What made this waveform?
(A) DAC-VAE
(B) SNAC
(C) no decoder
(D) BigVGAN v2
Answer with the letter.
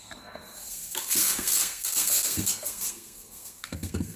B